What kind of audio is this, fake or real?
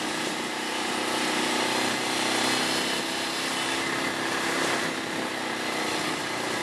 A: real